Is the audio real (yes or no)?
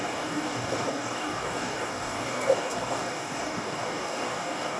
no